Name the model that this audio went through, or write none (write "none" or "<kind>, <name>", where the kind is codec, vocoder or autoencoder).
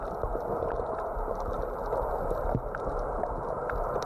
none